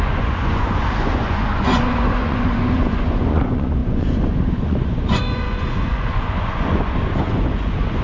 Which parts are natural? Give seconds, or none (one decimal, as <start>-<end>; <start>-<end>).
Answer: none

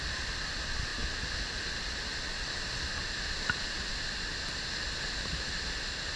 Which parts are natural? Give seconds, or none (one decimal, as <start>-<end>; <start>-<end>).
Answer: 0.0-6.2

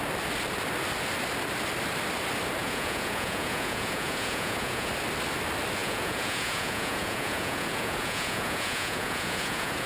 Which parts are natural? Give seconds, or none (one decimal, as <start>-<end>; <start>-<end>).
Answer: 0.0-2.6; 4.9-5.8

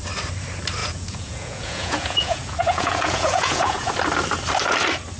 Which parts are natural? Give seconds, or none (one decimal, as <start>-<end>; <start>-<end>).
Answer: 0.0-0.8; 3.9-5.2